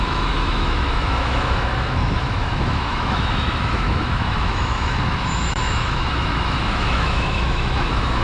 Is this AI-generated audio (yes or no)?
yes